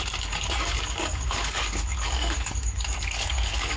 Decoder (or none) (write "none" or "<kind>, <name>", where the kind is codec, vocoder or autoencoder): codec, DAC